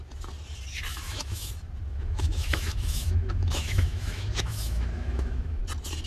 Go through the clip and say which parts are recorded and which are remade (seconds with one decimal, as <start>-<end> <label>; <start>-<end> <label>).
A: 0.0-0.9 recorded; 0.9-1.5 remade; 1.5-1.9 recorded; 1.9-5.6 remade; 5.6-6.1 recorded